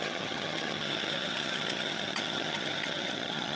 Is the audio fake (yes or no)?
yes